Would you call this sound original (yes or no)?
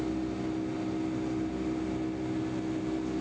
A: yes